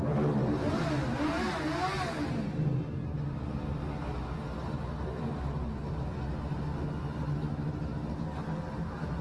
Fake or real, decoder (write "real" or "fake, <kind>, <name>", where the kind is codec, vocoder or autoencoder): real